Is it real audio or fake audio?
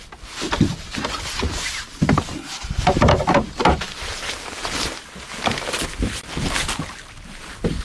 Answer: real